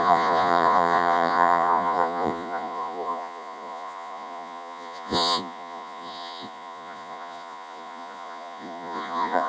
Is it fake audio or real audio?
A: fake